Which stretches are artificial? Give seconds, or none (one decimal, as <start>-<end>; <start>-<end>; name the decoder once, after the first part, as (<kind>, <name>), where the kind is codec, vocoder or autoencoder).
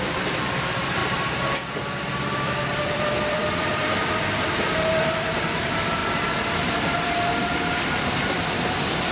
0.0-1.0 (vocoder, BigVGAN v2); 2.0-9.1